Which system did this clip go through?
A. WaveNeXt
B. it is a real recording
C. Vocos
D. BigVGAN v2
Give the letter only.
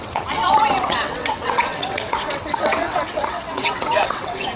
A